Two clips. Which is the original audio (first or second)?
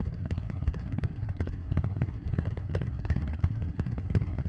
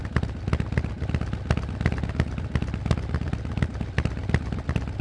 second